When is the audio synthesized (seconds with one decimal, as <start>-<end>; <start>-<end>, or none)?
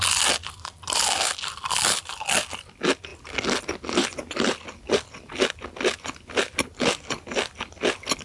none